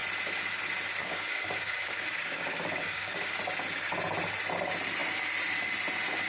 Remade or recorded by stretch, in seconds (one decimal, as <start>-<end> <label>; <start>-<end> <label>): 0.0-1.0 recorded; 1.0-3.4 remade; 3.4-6.3 recorded